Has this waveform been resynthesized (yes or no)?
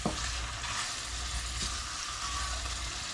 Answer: no